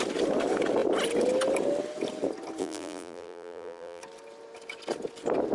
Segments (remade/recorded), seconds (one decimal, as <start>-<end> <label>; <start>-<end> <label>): 0.0-2.6 recorded; 2.6-4.0 remade; 4.0-5.5 recorded